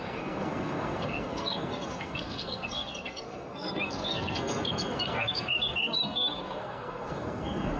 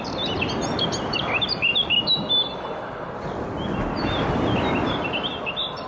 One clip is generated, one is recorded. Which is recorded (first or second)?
second